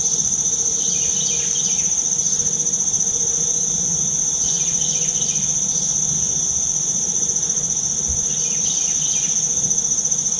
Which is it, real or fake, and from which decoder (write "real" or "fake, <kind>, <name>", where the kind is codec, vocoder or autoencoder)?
real